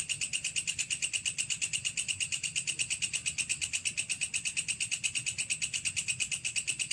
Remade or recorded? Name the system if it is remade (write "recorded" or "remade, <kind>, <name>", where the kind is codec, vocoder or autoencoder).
recorded